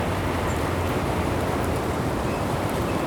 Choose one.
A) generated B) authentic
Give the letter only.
A